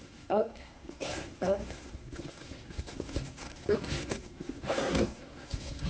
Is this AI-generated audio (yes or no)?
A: yes